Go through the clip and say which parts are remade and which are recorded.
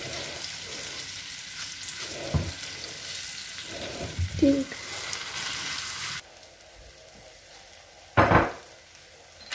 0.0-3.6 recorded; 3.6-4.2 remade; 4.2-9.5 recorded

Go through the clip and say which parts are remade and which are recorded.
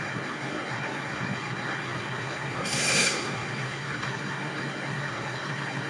0.0-5.9 remade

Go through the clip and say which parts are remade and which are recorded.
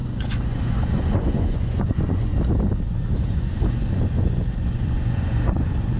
0.0-2.3 remade; 2.3-3.3 recorded; 3.3-6.0 remade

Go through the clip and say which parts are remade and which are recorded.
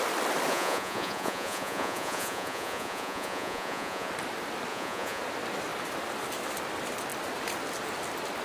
0.0-0.5 recorded; 0.5-4.1 remade; 4.1-4.7 recorded; 4.7-5.2 remade; 5.2-8.4 recorded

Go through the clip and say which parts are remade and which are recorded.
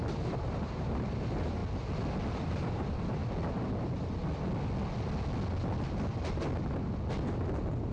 0.0-1.6 remade; 1.6-2.3 recorded; 2.3-3.2 remade; 3.2-7.9 recorded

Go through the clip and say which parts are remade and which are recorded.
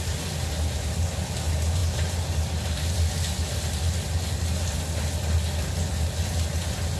0.0-7.0 recorded